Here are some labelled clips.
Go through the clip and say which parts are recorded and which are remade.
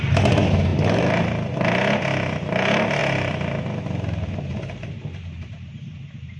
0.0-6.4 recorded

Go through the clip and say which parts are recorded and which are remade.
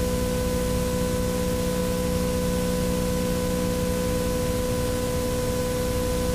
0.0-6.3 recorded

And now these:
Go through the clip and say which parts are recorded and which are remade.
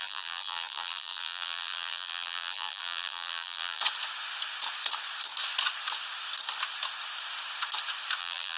0.0-3.8 remade; 3.8-8.2 recorded; 8.2-8.6 remade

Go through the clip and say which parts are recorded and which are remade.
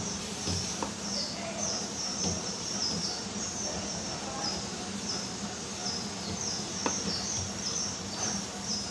0.0-5.8 remade; 5.8-6.3 recorded; 6.3-8.9 remade